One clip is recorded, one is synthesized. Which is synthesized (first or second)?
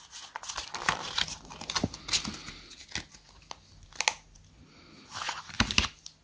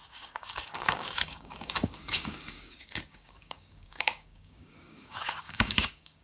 second